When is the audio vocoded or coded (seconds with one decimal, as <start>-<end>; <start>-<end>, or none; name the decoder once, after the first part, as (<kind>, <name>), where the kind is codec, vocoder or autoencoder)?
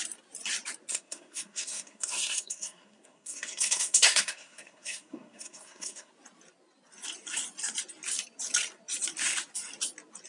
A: 0.9-6.1 (codec, SNAC)